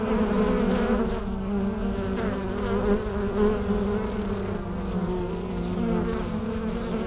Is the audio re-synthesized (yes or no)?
no